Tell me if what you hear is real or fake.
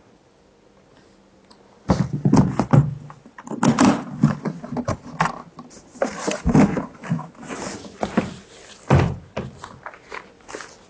real